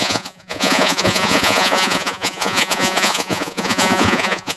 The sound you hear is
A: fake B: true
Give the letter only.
A